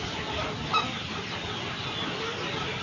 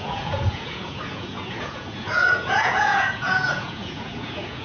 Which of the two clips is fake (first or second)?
second